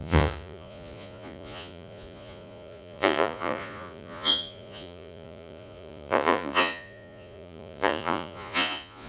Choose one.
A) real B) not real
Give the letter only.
B